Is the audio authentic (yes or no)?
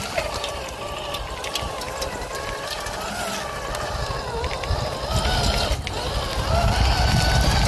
yes